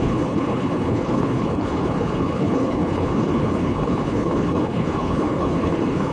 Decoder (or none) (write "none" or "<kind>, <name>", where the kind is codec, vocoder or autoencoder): codec, HILCodec